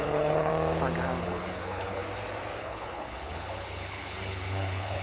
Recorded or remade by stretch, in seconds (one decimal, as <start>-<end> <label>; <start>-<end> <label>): 0.0-0.5 remade; 0.5-1.2 recorded; 1.2-2.0 remade; 2.0-2.6 recorded; 2.6-5.0 remade